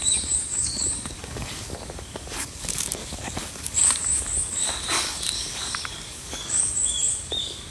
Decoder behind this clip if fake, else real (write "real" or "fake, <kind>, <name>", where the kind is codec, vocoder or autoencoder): fake, codec, DAC